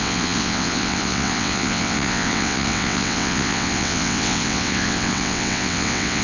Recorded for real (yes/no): no